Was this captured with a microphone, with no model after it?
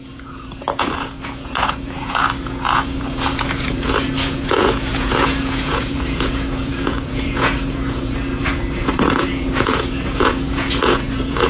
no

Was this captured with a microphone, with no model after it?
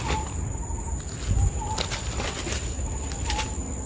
yes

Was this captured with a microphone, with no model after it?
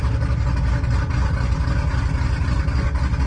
yes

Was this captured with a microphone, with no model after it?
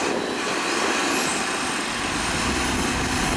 yes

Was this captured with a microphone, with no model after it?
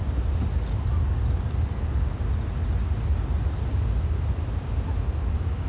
yes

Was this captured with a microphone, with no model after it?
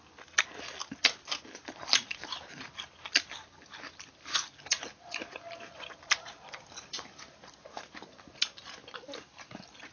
yes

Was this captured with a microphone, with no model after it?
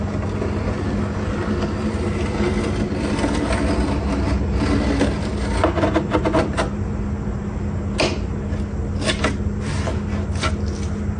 yes